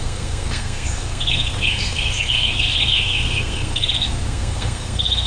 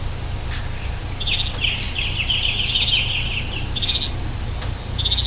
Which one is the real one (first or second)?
second